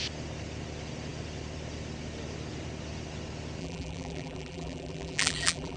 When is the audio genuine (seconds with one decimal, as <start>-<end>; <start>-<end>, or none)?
0.0-3.6